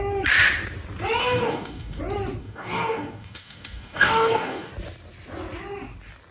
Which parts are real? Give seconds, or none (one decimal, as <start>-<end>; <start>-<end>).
0.0-1.2; 2.0-2.4; 4.7-6.3